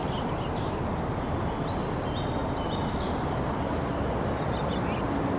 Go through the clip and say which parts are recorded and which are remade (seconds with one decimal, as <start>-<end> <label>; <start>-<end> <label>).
0.0-0.7 remade; 0.7-2.4 recorded; 2.4-3.9 remade; 3.9-5.4 recorded